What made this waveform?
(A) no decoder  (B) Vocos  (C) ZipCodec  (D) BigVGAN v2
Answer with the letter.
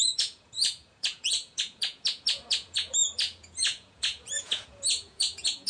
B